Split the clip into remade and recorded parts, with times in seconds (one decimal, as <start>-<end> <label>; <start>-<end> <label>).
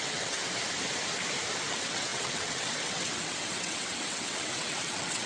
0.0-0.4 remade; 0.4-1.7 recorded; 1.7-5.3 remade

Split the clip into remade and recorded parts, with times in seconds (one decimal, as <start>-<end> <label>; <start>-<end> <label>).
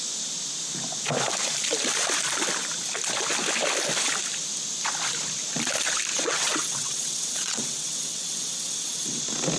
0.0-6.1 recorded; 6.1-9.2 remade; 9.2-9.6 recorded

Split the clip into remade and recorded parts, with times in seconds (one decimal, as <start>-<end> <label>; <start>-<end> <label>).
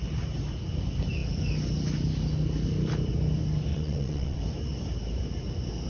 0.0-3.7 recorded; 3.7-4.4 remade; 4.4-5.9 recorded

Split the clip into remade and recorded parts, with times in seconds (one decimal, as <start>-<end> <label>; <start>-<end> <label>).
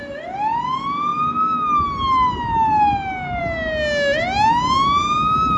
0.0-5.6 recorded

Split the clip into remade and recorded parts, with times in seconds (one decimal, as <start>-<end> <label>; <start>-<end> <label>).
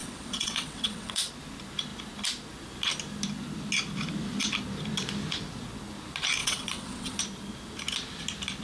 0.0-1.3 remade; 1.3-6.4 recorded; 6.4-7.2 remade; 7.2-8.6 recorded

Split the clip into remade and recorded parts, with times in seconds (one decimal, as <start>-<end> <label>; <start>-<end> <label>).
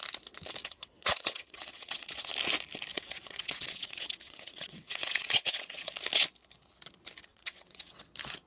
0.0-0.6 recorded; 0.6-2.3 remade; 2.3-2.9 recorded; 2.9-5.9 remade; 5.9-7.3 recorded; 7.3-8.1 remade; 8.1-8.5 recorded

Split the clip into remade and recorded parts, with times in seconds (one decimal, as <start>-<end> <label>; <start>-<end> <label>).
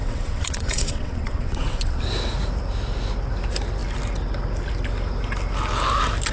0.0-2.0 remade; 2.0-6.3 recorded